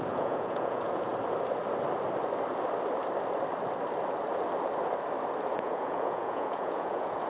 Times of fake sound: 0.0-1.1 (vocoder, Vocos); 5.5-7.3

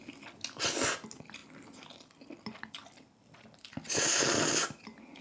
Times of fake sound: none

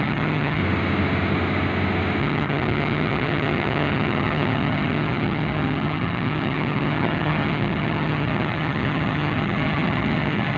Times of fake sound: 0.0-0.6 (vocoder, HiFi-GAN); 2.2-10.6

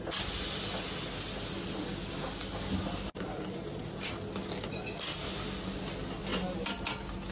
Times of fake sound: none

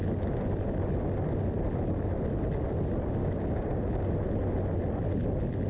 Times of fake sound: 3.2-4.1 (codec, DAC)

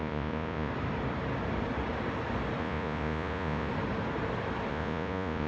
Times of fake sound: 0.0-0.7 (vocoder, Vocos); 2.6-3.7; 4.7-5.5